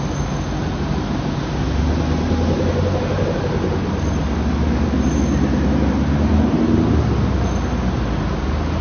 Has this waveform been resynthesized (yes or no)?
no